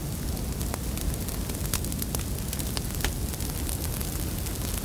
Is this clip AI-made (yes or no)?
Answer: no